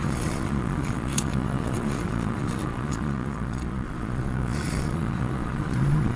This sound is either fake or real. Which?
fake